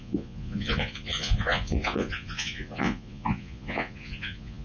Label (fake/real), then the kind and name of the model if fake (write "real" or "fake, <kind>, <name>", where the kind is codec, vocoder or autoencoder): fake, vocoder, Vocos